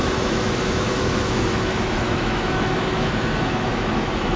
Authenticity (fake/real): fake